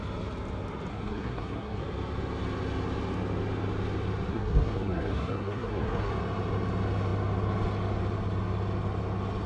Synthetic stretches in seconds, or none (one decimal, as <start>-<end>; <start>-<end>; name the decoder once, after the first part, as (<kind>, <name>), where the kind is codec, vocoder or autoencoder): 0.9-1.8 (codec, SNAC); 4.3-6.1